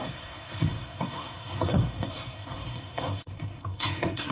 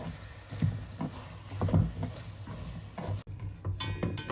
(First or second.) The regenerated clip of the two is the first